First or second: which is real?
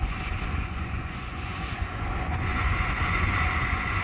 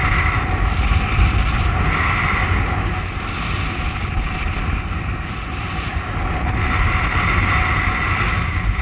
second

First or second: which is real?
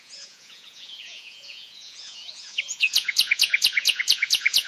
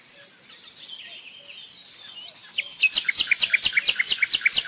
second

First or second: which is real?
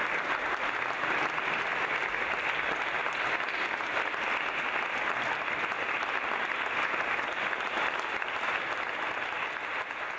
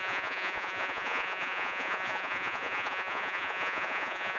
first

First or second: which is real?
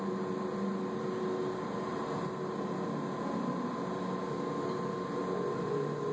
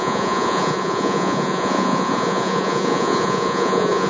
first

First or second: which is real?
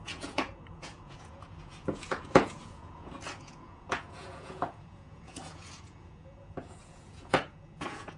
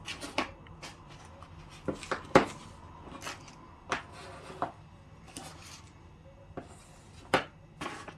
second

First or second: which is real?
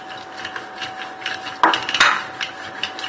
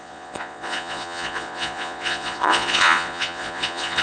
first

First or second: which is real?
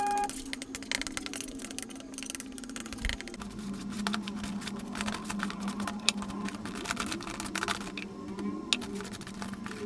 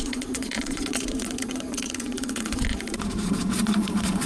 first